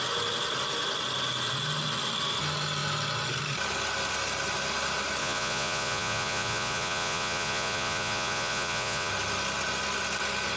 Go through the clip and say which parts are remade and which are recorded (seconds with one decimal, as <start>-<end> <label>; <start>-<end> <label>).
0.0-5.2 recorded; 5.2-9.1 remade; 9.1-10.6 recorded